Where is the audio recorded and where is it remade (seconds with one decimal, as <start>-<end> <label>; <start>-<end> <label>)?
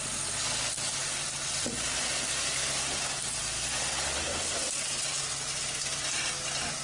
0.0-6.8 recorded